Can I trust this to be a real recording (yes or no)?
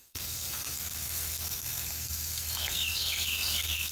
no